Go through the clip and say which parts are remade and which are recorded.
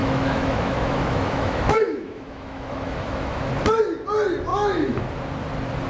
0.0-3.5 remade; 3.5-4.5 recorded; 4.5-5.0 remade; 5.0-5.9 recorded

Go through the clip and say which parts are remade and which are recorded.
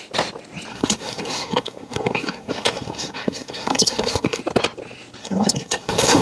0.0-0.7 recorded; 0.7-4.4 remade; 4.4-5.2 recorded; 5.2-6.2 remade